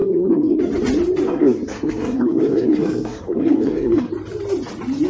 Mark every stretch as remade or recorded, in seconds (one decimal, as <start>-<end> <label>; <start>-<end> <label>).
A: 0.0-0.6 remade; 0.6-1.3 recorded; 1.3-4.1 remade; 4.1-5.1 recorded